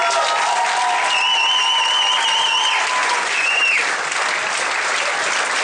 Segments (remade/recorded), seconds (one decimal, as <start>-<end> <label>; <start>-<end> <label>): 0.0-3.0 recorded; 3.0-3.6 remade; 3.6-5.6 recorded

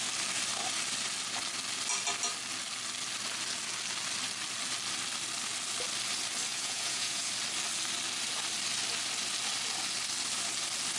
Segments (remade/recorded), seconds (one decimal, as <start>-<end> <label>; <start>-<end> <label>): 0.0-6.5 recorded; 6.5-7.3 remade; 7.3-11.0 recorded

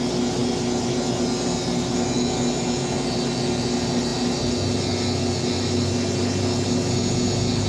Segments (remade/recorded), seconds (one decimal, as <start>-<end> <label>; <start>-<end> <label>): 0.0-7.7 recorded

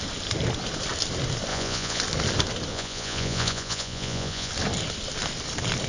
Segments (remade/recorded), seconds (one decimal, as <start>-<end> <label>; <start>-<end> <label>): 0.0-1.5 recorded; 1.5-2.0 remade; 2.0-2.7 recorded; 2.7-4.5 remade; 4.5-5.9 recorded

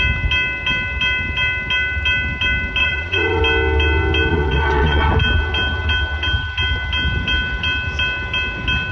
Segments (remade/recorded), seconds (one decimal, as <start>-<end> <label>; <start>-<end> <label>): 0.0-2.8 recorded; 2.8-3.4 remade; 3.4-4.3 recorded; 4.3-5.1 remade; 5.1-8.9 recorded